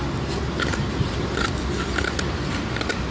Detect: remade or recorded recorded